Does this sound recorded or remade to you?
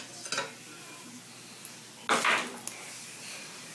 recorded